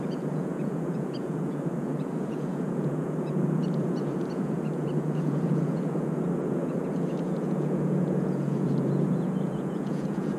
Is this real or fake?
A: fake